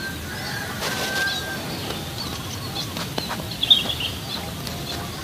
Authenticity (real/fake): real